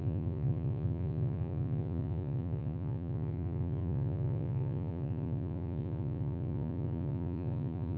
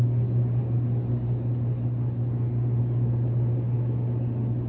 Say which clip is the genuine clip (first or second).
second